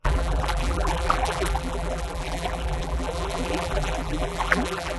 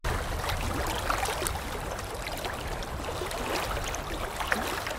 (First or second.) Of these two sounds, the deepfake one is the first